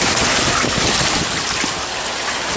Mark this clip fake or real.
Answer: real